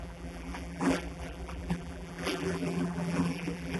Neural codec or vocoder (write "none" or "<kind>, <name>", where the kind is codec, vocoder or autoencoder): vocoder, BigVGAN v2